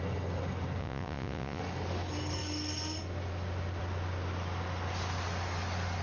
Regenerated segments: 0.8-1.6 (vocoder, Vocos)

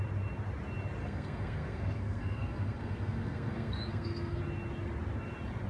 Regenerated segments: 1.0-4.4 (codec, SNAC)

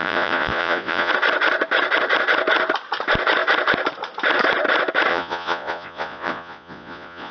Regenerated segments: 0.0-1.1 (vocoder, Vocos); 5.1-7.3

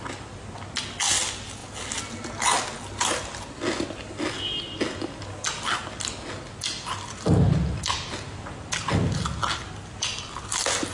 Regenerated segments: none

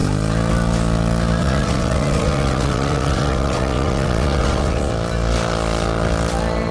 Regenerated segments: 1.4-4.9 (vocoder, WaveNeXt)

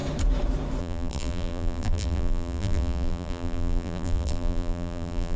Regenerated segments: 0.8-5.4 (vocoder, BigVGAN v2)

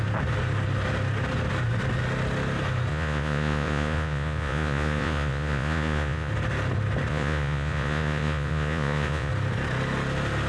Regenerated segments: 2.9-6.3 (vocoder, Vocos); 7.1-9.3

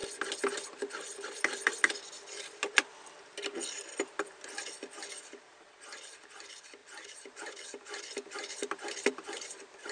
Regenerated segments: 6.8-9.9 (vocoder, BigVGAN v2)